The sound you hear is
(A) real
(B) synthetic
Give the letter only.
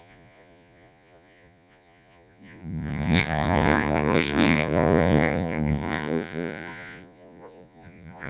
B